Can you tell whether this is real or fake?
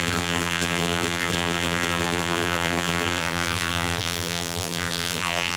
fake